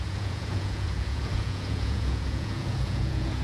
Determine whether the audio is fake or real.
fake